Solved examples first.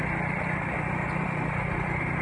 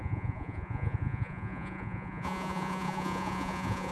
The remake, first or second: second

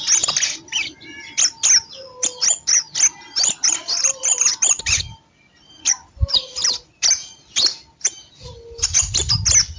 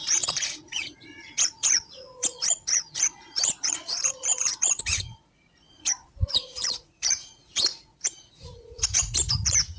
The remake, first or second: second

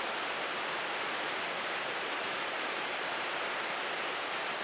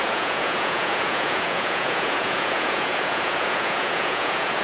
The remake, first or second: second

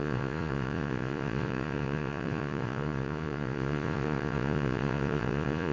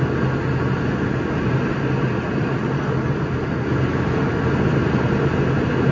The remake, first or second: first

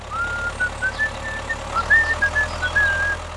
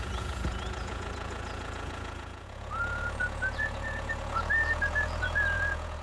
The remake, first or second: second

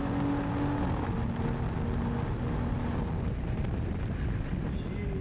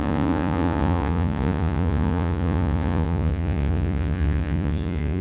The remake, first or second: second